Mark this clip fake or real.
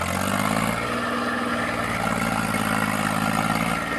real